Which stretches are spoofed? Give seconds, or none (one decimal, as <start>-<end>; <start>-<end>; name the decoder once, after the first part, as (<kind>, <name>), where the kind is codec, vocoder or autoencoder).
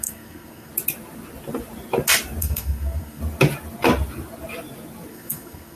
0.0-0.7 (codec, SNAC); 2.4-3.2; 5.1-5.8